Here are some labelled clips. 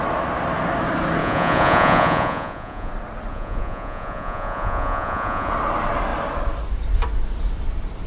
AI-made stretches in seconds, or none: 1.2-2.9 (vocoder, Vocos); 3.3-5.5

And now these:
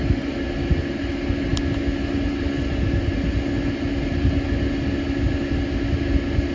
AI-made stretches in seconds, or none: none

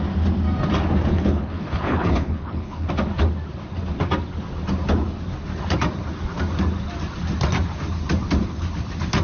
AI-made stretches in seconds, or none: 1.1-2.9 (codec, HILCodec)

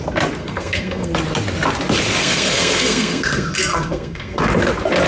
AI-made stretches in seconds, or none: 0.4-1.1 (codec, SNAC); 2.2-4.4

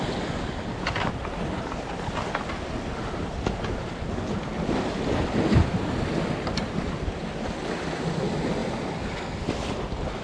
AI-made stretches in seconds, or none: none

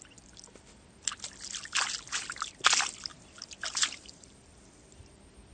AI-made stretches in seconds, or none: none

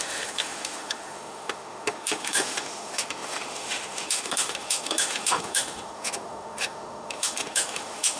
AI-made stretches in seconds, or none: 0.0-8.2 (autoencoder, DAC-VAE)

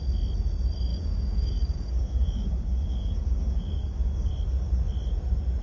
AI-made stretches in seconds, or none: 0.9-4.3 (codec, DAC)